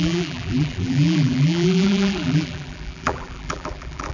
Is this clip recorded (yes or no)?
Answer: no